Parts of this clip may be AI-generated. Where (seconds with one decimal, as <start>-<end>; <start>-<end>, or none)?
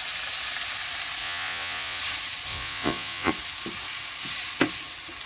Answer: 1.2-2.0; 2.5-3.3